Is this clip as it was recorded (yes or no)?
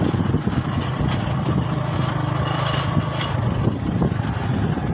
yes